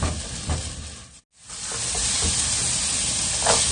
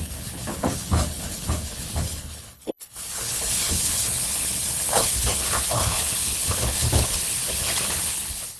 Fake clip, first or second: second